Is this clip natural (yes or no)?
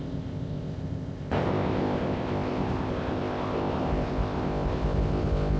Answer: no